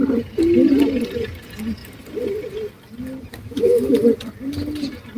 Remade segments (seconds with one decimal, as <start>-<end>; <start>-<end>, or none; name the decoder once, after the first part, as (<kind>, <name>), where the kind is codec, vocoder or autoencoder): 3.3-4.0 (autoencoder, DAC-VAE)